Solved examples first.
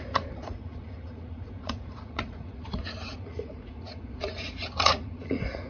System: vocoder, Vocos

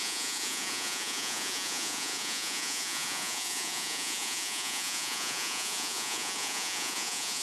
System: vocoder, Vocos